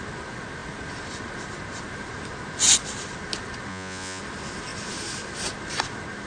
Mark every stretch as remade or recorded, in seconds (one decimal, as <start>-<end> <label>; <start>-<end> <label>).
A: 0.0-3.7 recorded; 3.7-4.2 remade; 4.2-6.3 recorded